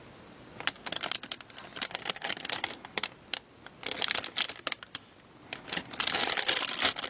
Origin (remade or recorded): recorded